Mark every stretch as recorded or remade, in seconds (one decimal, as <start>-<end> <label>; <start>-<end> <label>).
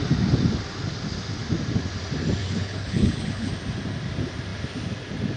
0.0-2.4 recorded; 2.4-3.5 remade; 3.5-5.4 recorded